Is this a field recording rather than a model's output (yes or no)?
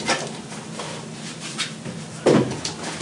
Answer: yes